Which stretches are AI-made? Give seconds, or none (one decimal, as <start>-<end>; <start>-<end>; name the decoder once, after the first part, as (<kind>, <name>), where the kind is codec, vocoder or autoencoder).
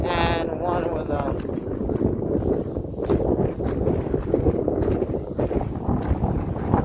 none